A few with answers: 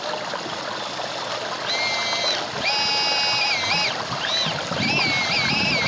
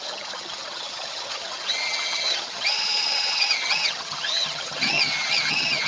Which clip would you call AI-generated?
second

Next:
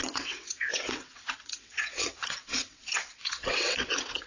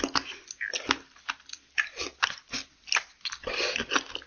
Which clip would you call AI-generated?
first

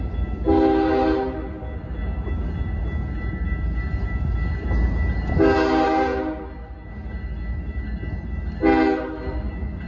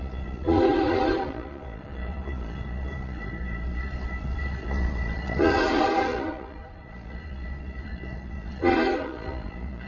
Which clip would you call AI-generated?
second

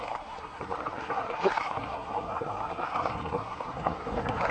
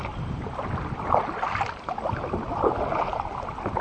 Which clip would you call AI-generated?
first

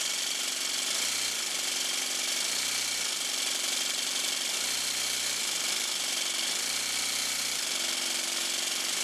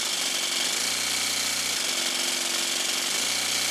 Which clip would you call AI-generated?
first